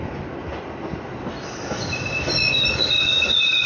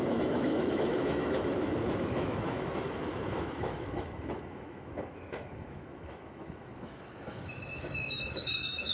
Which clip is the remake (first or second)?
second